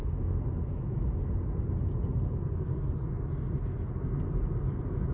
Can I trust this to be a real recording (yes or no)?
yes